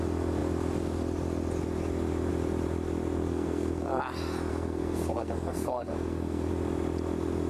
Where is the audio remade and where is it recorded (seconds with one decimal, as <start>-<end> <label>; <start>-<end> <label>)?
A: 0.0-3.3 recorded; 3.3-4.0 remade; 4.0-4.5 recorded; 4.5-6.5 remade; 6.5-7.5 recorded